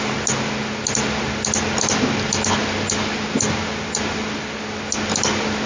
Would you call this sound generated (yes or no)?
no